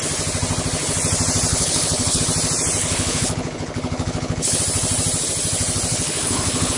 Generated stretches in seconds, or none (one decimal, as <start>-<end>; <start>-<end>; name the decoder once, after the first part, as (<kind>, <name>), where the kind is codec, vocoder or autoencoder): 1.5-2.2 (codec, HILCodec); 2.8-4.6; 5.9-6.8